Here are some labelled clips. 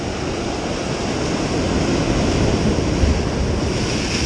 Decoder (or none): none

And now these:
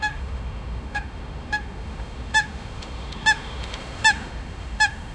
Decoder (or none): autoencoder, DAC-VAE